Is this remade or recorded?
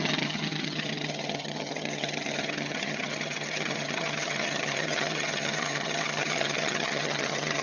remade